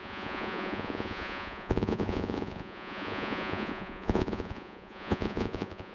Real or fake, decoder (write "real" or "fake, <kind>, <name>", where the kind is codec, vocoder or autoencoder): fake, vocoder, Vocos